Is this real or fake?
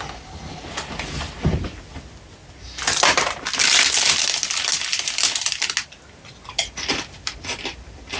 real